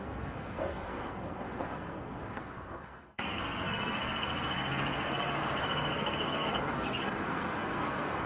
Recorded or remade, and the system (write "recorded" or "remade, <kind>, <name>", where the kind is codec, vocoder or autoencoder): remade, codec, SNAC